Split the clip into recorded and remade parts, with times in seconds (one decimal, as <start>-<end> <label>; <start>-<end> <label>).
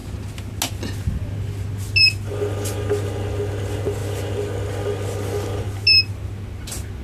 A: 0.0-7.0 recorded